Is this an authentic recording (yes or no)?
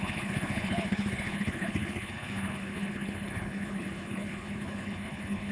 no